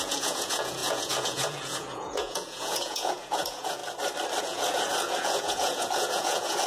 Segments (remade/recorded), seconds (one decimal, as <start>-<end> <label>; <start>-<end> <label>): 0.0-3.8 remade; 3.8-4.4 recorded; 4.4-6.7 remade